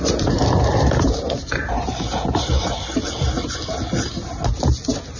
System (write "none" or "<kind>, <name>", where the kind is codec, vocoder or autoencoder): none